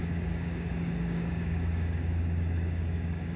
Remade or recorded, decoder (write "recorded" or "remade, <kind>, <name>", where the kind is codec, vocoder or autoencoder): remade, codec, DAC